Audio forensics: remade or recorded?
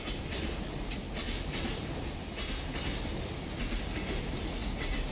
recorded